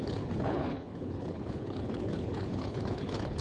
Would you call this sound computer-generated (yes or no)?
yes